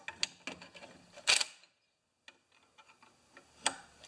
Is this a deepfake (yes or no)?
no